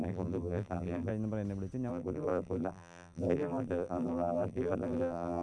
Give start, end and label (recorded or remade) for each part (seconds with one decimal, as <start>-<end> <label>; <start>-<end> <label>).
0.0-1.1 remade; 1.1-1.9 recorded; 1.9-5.4 remade

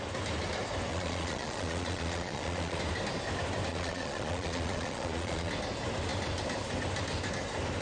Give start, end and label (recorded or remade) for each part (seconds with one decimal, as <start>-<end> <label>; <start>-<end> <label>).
0.0-0.9 recorded; 0.9-2.8 remade; 2.8-3.7 recorded; 3.7-5.5 remade; 5.5-7.8 recorded